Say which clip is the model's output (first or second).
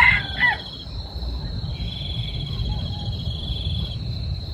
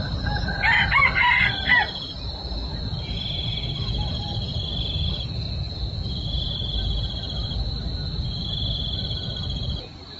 first